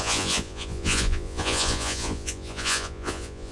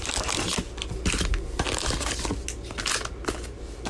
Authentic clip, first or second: second